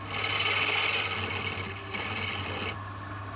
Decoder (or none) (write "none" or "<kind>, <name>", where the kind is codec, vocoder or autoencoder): none